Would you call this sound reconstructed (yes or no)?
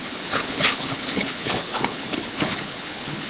yes